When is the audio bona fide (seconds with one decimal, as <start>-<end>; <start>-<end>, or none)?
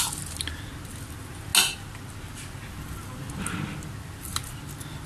0.0-5.1